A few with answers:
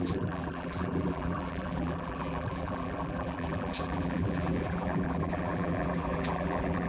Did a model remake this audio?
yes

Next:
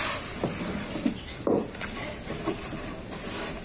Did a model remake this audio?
yes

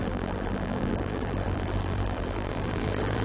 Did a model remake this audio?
yes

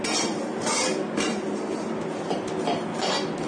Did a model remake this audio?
no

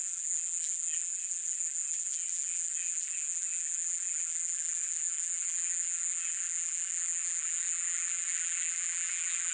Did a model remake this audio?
yes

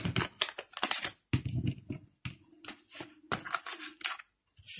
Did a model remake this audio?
no